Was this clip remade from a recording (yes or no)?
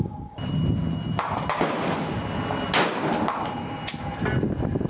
no